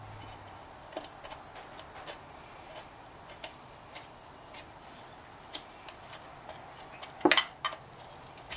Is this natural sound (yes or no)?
yes